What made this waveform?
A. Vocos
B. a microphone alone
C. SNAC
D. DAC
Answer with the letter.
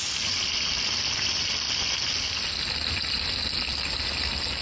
B